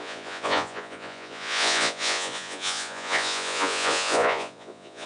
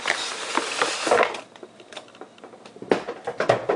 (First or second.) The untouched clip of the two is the second